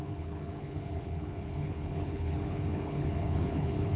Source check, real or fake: fake